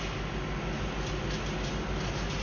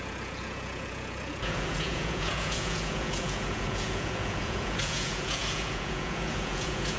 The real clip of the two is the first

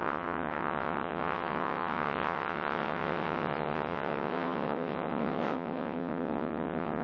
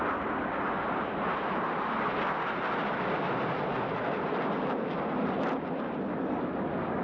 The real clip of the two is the second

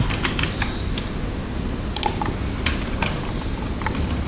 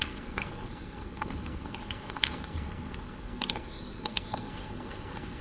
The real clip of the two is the first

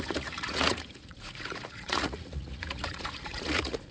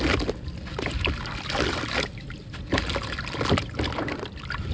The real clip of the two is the second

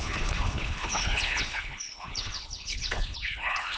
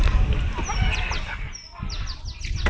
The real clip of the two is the second